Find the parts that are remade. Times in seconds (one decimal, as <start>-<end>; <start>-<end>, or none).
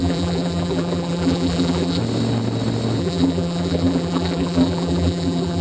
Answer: 0.0-2.0; 3.0-5.6